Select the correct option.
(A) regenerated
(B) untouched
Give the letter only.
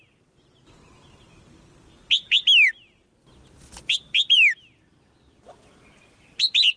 B